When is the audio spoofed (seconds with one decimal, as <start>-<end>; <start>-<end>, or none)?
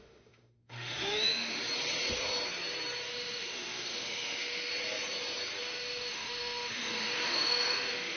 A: 0.0-1.6; 3.1-4.7; 5.6-8.2